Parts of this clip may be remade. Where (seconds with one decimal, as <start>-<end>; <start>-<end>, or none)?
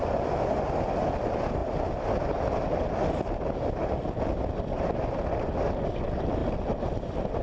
none